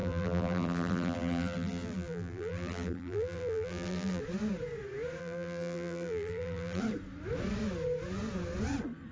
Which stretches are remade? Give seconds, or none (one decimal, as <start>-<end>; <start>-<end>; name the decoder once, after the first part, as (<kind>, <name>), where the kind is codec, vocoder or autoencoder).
0.0-4.2 (vocoder, BigVGAN v2); 5.2-6.8